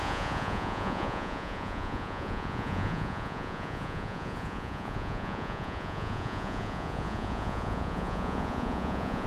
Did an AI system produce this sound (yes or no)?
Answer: yes